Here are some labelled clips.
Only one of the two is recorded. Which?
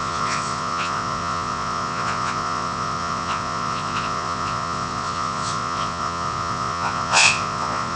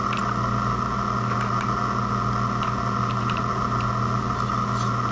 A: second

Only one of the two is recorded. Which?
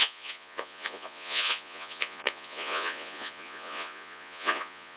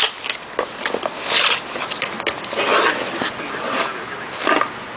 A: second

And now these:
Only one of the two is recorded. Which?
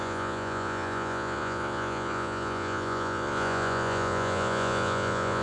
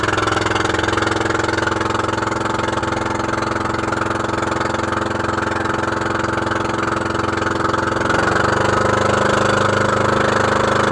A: second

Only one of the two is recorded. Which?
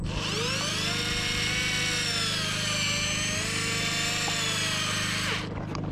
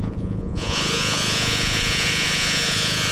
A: first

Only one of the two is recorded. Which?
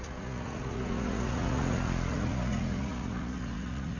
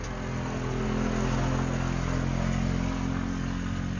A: second